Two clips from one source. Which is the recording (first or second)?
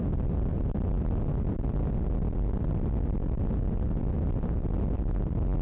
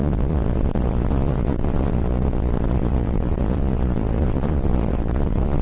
first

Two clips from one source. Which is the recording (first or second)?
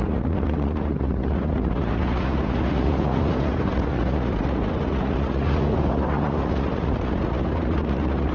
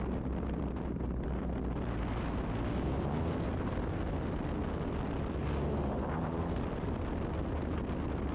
second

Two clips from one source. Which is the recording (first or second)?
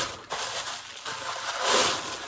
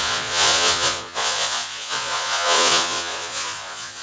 first